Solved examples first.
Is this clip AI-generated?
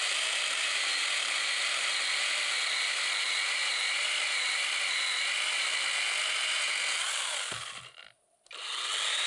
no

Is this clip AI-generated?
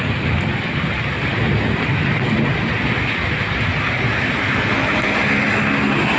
no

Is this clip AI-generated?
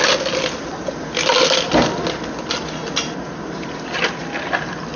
no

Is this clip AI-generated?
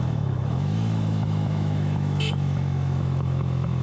yes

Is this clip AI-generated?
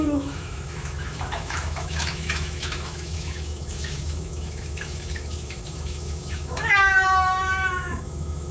yes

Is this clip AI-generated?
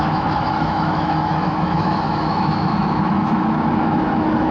yes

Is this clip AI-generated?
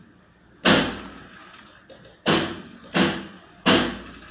no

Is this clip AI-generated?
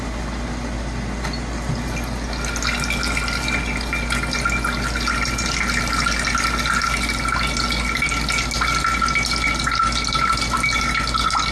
no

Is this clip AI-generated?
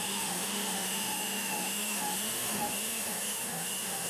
yes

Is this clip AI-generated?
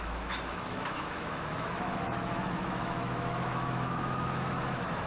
yes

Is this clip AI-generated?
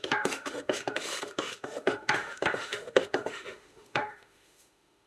yes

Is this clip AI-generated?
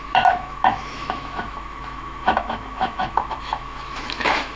yes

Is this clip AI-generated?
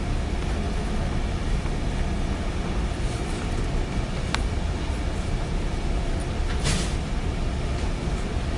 no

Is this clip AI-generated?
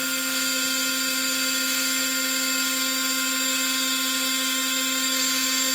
yes